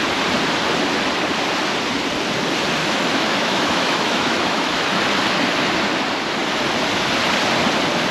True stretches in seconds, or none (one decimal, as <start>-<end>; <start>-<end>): 0.0-2.8; 5.0-8.1